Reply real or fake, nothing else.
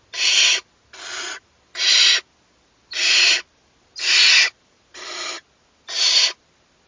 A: real